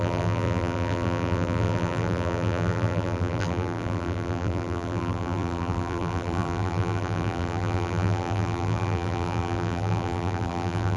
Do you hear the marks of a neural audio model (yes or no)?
yes